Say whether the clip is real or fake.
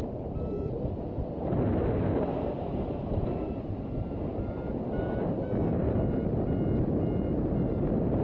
real